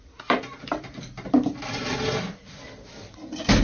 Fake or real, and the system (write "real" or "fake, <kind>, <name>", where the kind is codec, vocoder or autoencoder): fake, vocoder, BigVGAN v2